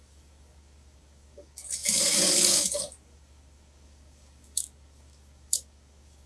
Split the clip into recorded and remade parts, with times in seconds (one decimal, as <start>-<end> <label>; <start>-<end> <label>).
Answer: 0.0-6.3 remade